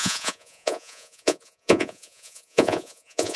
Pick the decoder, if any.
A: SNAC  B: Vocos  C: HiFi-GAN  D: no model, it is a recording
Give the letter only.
B